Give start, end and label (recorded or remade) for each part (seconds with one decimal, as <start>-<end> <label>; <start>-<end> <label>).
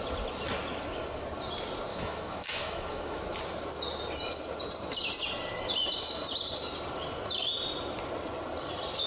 0.0-1.9 recorded; 1.9-3.2 remade; 3.2-9.1 recorded